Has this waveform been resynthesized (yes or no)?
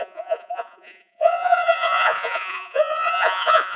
yes